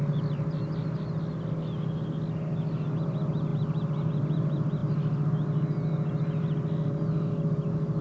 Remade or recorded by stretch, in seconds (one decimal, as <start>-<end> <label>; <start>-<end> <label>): 0.0-8.0 recorded